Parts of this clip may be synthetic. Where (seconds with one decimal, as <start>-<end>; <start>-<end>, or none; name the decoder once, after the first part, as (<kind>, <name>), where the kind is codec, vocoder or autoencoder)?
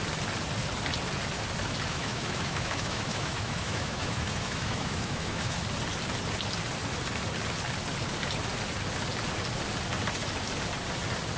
1.9-5.6 (autoencoder, DAC-VAE)